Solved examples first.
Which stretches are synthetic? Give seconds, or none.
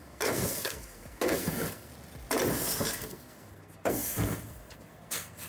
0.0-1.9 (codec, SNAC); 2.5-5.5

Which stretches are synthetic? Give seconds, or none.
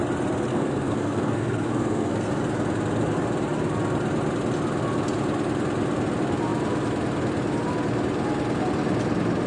0.5-2.4 (codec, SNAC)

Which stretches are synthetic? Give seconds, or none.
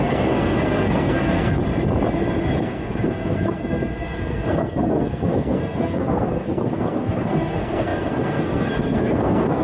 0.0-1.6 (codec, SNAC); 2.5-9.6